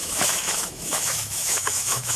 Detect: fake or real fake